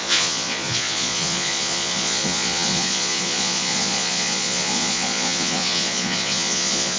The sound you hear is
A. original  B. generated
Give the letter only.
B